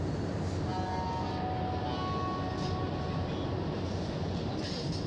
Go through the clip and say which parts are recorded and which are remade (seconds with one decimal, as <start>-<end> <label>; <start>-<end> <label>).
0.0-5.1 recorded